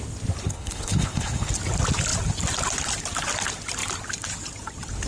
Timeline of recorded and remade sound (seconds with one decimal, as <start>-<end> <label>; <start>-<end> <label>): 0.0-0.4 recorded; 0.4-1.5 remade; 1.5-5.1 recorded